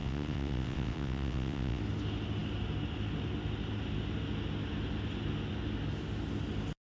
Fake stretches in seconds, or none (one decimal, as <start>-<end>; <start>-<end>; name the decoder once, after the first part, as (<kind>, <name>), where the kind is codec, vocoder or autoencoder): 0.0-1.8 (vocoder, WaveNeXt)